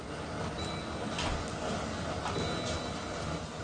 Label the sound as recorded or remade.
recorded